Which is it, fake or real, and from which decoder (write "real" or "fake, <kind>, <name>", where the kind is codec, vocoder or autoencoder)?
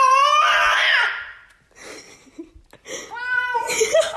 real